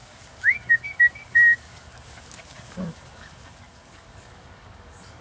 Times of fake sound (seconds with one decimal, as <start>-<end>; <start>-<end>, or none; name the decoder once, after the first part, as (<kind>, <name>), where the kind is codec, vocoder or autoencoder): 0.0-5.2 (codec, DAC)